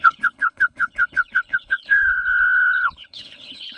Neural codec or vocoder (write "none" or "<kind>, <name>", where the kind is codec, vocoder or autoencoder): codec, HILCodec